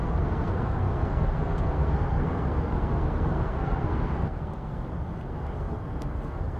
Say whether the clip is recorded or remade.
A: remade